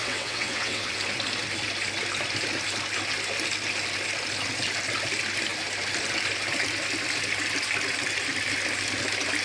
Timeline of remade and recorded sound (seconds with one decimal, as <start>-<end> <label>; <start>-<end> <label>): 0.0-0.9 remade; 0.9-9.4 recorded